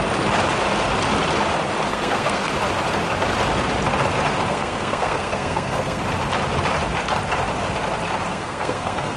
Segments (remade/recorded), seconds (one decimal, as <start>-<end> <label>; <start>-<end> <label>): 0.0-1.9 recorded; 1.9-2.5 remade; 2.5-4.5 recorded; 4.5-6.0 remade; 6.0-8.3 recorded; 8.3-9.2 remade